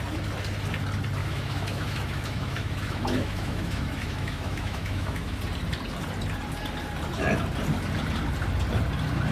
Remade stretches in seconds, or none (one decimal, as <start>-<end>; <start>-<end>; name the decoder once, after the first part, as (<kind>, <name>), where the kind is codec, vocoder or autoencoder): 1.2-5.4 (autoencoder, DAC-VAE)